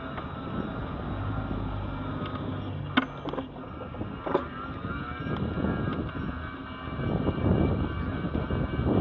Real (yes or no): yes